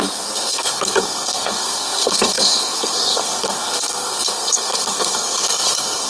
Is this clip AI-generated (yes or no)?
yes